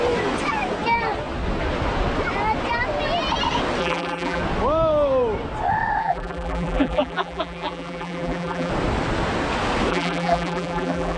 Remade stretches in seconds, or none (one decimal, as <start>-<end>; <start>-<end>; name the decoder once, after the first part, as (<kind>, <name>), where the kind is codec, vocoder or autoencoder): 3.8-4.4 (vocoder, BigVGAN v2); 6.0-8.7; 9.9-11.2